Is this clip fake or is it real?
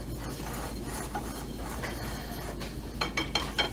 real